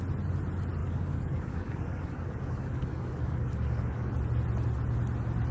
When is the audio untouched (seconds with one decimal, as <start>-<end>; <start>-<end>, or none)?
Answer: 0.0-0.8; 4.1-5.5